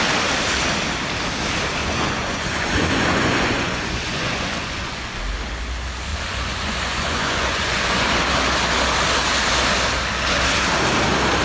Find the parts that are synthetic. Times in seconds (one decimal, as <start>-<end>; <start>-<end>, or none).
1.8-5.2; 6.1-8.2